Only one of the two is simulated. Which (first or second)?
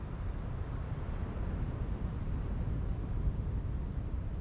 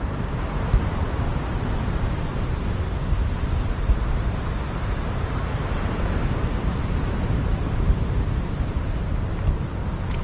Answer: second